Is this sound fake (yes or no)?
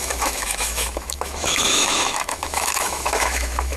yes